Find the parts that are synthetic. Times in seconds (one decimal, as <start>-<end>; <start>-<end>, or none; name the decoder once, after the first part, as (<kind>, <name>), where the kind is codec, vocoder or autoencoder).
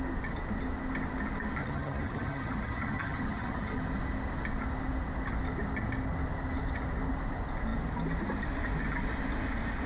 1.6-3.8 (vocoder, HiFi-GAN)